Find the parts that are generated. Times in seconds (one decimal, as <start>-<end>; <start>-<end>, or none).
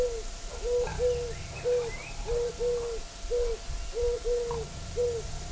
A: none